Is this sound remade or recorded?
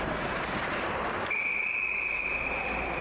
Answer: remade